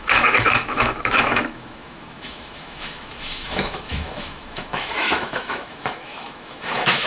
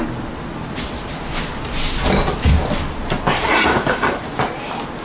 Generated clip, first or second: first